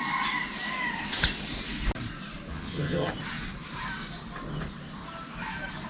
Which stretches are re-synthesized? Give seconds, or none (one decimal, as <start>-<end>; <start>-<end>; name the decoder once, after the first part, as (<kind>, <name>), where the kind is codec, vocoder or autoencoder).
2.5-3.1 (vocoder, HiFi-GAN)